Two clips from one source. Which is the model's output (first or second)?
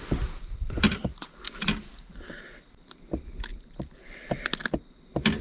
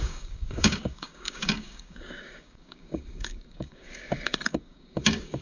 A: second